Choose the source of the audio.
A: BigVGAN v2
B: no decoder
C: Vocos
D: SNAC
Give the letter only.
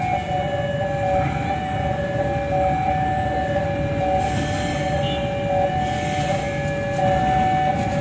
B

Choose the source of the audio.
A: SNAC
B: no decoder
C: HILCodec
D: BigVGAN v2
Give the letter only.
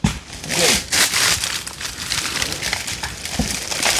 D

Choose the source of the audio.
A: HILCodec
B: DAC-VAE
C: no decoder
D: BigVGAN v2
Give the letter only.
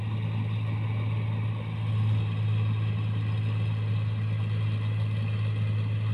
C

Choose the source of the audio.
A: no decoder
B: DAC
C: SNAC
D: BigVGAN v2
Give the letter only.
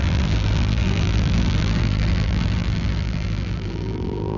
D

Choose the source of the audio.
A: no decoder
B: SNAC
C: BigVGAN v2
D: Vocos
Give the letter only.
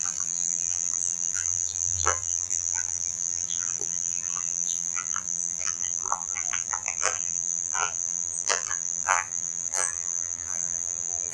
C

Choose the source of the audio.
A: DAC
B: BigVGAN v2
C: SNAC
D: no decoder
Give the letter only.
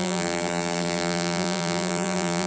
B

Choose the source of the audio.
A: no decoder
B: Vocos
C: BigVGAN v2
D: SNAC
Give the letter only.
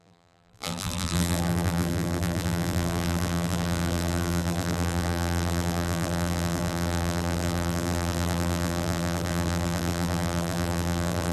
C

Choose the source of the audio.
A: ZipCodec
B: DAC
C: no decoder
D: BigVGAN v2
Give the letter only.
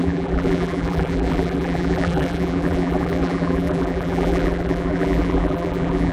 D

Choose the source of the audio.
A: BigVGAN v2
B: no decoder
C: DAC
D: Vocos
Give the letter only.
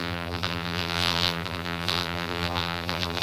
A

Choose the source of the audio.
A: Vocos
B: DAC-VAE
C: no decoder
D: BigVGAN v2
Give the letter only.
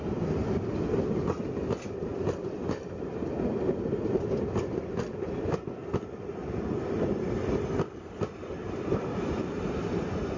D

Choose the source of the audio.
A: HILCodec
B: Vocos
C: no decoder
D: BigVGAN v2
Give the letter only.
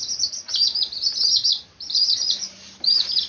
D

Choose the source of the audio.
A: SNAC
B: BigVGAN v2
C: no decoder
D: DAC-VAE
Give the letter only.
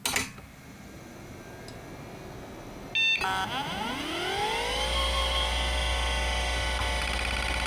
C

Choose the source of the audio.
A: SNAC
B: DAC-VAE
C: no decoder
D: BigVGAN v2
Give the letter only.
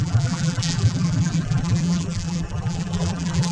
D